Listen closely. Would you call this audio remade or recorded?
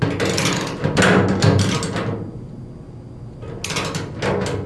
recorded